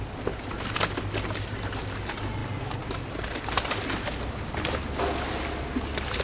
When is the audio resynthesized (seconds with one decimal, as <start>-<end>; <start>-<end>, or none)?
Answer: none